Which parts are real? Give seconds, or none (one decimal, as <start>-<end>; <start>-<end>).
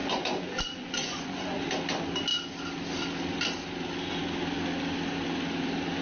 1.6-6.0